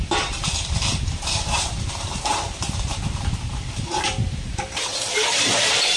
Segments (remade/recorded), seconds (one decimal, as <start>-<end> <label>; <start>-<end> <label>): 0.0-6.0 remade

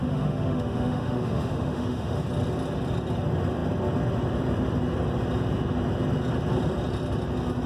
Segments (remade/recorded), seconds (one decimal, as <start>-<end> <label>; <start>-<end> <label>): 0.0-2.2 remade; 2.2-7.7 recorded